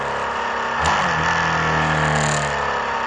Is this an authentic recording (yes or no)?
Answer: yes